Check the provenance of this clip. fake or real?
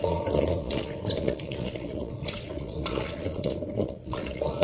fake